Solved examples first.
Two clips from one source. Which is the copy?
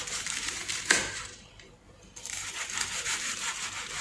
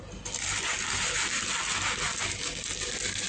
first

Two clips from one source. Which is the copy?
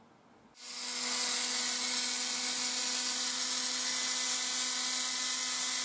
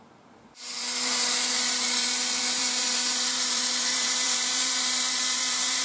second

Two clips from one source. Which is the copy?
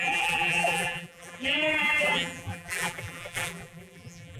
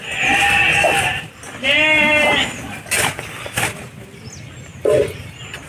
first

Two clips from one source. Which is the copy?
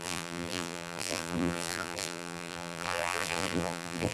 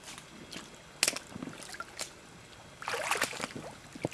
first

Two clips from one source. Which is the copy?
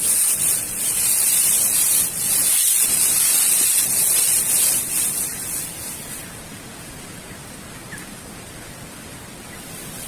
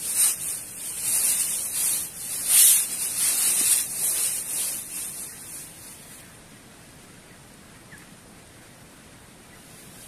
first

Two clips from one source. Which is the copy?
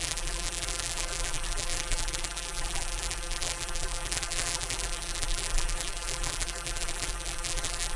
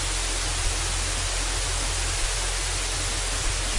first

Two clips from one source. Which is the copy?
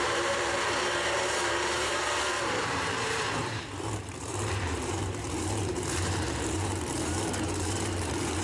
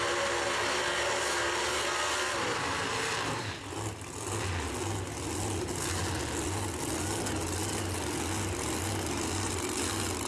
first